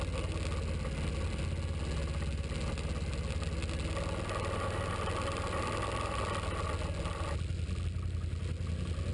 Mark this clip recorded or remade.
recorded